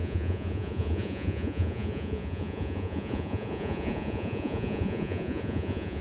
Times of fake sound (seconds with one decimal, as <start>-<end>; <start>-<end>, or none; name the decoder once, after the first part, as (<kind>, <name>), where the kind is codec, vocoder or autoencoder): 0.0-6.0 (vocoder, Vocos)